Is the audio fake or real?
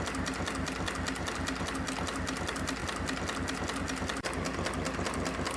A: real